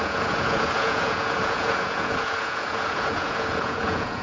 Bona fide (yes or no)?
no